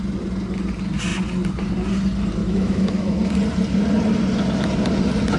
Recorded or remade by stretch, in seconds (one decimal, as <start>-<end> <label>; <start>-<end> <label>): 0.0-2.4 recorded; 2.4-3.2 remade; 3.2-5.4 recorded